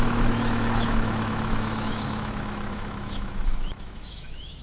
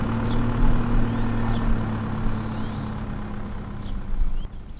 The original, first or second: second